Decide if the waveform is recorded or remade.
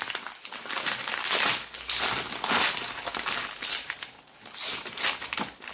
recorded